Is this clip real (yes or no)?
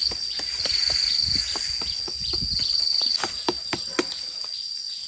yes